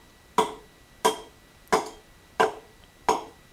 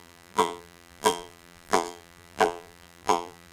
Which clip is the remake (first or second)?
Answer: second